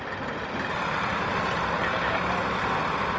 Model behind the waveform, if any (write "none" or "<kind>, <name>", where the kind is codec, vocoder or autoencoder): vocoder, BigVGAN v2